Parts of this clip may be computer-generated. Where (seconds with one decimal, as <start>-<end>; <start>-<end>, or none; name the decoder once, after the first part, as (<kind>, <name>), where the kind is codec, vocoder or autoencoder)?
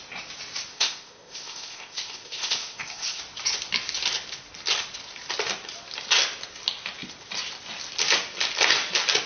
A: 0.7-3.2 (codec, ZipCodec)